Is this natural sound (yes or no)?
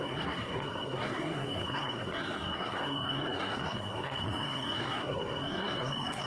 no